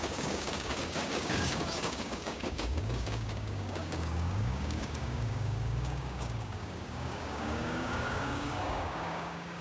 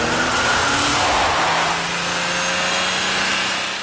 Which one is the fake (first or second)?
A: first